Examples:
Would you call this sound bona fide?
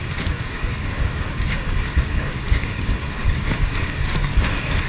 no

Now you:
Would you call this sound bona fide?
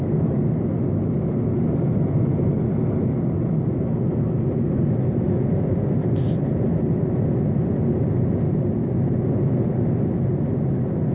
yes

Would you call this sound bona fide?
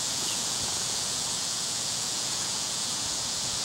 no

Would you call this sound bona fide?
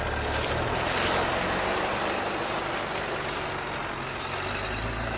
yes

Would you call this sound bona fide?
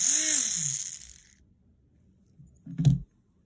yes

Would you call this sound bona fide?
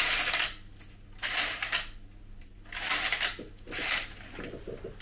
yes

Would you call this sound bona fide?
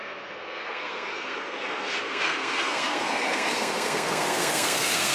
no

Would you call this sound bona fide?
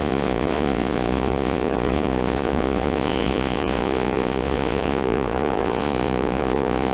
no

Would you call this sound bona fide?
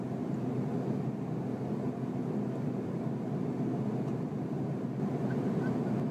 yes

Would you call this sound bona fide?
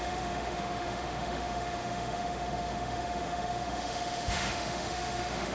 no